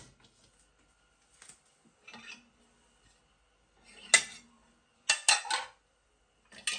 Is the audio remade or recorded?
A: recorded